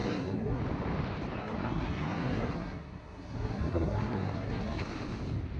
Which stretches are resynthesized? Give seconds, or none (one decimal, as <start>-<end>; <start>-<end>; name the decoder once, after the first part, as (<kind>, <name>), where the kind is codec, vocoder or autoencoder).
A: 0.0-0.6 (codec, SNAC); 1.4-4.8